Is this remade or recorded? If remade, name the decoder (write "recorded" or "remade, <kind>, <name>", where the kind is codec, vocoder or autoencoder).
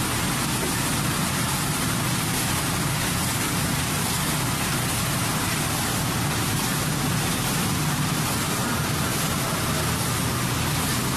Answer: recorded